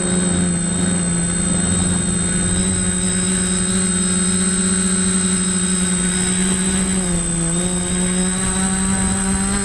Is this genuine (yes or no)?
yes